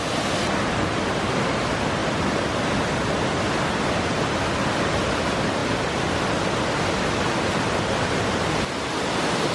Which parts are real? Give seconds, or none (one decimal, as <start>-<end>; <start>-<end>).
0.0-9.5